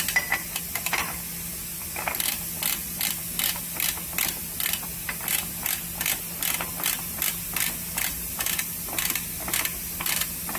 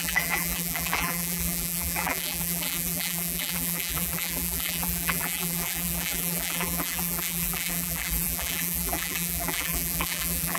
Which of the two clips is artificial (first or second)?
second